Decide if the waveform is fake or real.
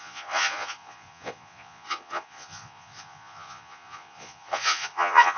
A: fake